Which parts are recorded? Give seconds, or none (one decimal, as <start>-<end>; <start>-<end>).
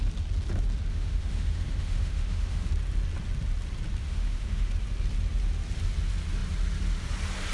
0.0-0.9; 2.7-4.0; 4.7-7.5